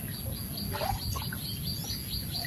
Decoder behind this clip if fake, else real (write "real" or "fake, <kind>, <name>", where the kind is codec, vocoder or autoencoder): real